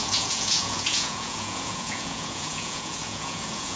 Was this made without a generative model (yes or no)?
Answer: no